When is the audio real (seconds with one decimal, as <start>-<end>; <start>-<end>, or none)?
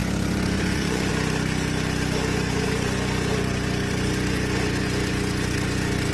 1.1-2.3